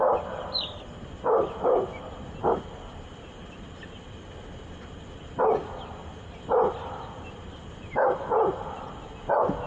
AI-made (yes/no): no